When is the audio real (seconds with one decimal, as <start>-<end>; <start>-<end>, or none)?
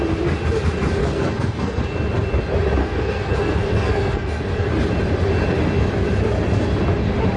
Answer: 0.0-1.0; 1.8-2.8; 4.7-7.4